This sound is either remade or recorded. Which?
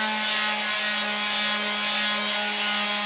recorded